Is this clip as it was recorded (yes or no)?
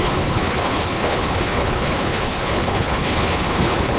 no